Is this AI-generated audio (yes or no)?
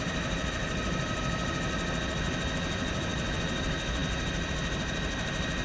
no